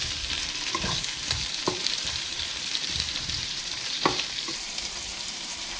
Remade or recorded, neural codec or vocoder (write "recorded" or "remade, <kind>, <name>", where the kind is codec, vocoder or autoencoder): remade, vocoder, BigVGAN v2